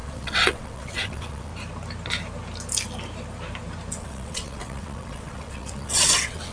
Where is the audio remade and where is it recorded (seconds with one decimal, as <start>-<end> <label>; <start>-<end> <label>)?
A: 0.0-1.5 remade; 1.5-4.0 recorded; 4.0-6.5 remade